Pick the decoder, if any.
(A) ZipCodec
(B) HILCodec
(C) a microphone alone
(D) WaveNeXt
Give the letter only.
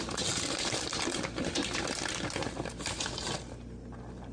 C